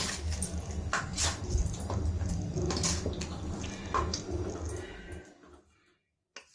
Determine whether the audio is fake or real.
real